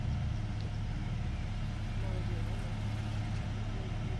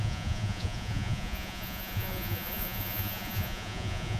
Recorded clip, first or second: first